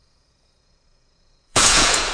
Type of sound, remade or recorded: remade